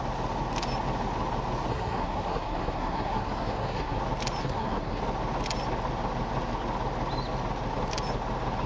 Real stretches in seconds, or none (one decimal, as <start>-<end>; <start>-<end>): 0.0-1.7; 4.0-4.4; 5.0-8.7